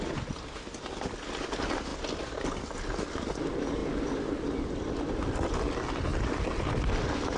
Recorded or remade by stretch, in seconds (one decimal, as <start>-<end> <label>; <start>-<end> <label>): 0.0-7.4 recorded